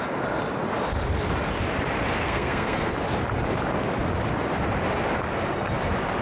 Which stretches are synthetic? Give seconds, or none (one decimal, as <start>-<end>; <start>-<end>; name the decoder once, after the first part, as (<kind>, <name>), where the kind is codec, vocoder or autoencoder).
2.2-2.9 (codec, SNAC)